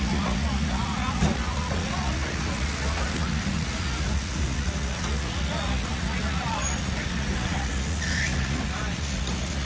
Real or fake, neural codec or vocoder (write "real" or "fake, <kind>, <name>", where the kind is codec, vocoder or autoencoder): fake, vocoder, Vocos